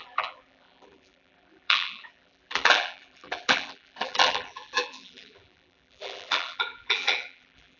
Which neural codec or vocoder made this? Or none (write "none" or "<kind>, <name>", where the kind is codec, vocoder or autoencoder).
vocoder, BigVGAN v2